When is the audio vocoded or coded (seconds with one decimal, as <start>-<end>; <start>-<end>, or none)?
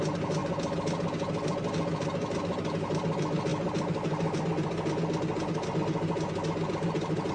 none